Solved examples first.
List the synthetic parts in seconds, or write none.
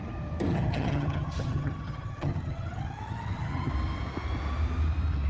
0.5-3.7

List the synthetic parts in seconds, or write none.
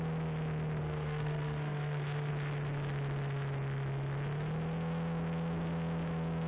0.8-2.3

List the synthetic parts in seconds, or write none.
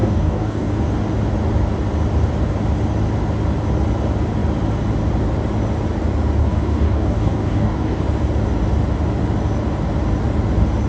0.0-0.8; 6.4-8.0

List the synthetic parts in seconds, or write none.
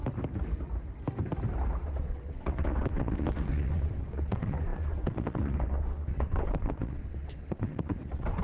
1.8-8.4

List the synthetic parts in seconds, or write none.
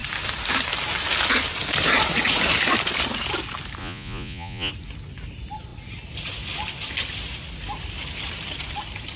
3.8-4.7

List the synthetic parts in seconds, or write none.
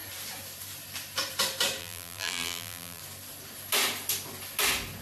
1.8-3.0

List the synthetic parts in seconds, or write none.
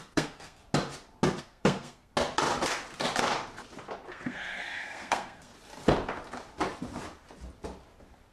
0.0-0.6; 1.4-2.1; 4.1-5.5